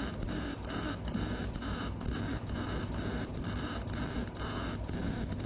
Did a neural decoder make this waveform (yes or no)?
no